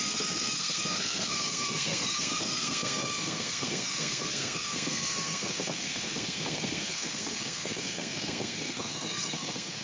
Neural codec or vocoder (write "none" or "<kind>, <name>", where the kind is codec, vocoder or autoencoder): codec, SNAC